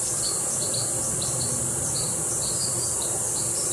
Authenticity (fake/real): real